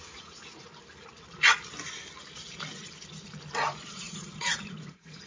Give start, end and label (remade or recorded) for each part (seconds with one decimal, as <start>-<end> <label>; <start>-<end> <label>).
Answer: 0.0-0.7 remade; 0.7-3.9 recorded; 3.9-5.3 remade